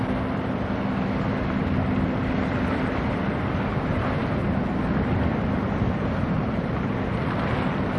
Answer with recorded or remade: recorded